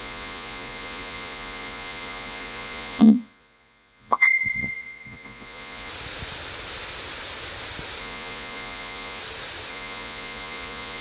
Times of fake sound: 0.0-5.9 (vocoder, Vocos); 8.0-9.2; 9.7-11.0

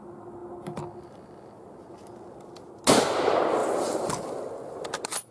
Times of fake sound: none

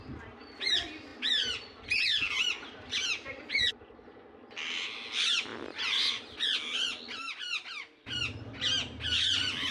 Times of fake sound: none

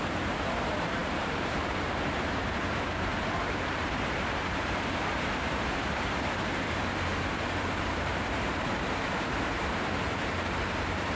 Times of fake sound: 0.0-11.2 (vocoder, BigVGAN v2)

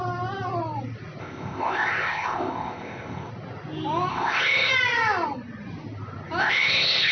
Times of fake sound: 1.2-3.3 (codec, ZipCodec); 4.1-4.7; 6.4-7.1

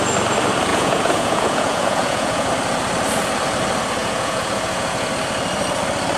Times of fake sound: 0.7-2.5 (vocoder, Vocos); 4.0-5.1

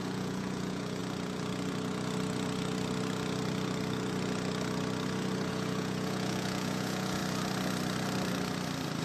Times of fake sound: 0.0-1.0 (vocoder, Vocos); 5.5-7.2

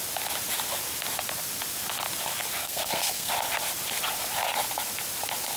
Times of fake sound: 2.6-3.3 (codec, SNAC)